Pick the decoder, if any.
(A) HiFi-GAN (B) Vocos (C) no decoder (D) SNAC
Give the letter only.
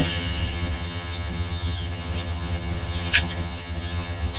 A